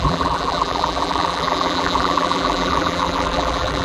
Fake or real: fake